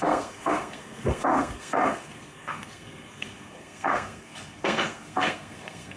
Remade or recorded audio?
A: remade